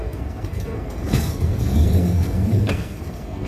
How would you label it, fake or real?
fake